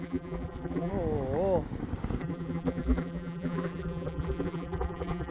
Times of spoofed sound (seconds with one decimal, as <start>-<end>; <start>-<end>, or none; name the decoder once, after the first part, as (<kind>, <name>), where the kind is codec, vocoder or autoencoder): 0.0-0.9 (vocoder, BigVGAN v2); 2.2-5.3